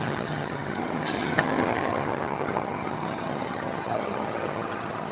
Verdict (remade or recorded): remade